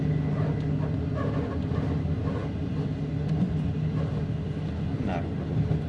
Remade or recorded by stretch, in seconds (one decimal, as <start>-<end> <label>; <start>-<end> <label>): 0.0-5.9 recorded